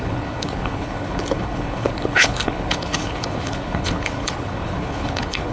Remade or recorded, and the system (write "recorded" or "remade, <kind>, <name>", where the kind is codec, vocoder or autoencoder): remade, codec, HILCodec